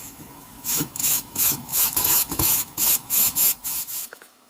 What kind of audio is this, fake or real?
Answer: fake